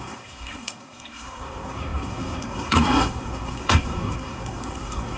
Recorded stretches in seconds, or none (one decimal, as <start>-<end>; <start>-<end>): none